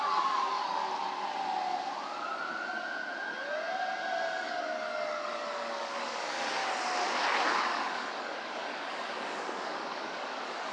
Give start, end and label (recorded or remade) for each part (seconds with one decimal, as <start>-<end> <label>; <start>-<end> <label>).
0.0-0.8 remade; 0.8-4.4 recorded; 4.4-6.6 remade; 6.6-7.6 recorded; 7.6-10.7 remade